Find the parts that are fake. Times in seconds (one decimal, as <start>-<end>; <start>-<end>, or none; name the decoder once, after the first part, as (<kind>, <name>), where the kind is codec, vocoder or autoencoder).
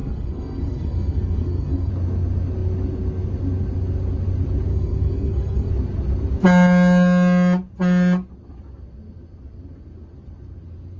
0.0-1.9 (codec, SNAC); 4.7-5.7